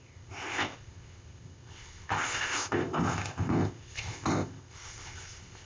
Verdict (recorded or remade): remade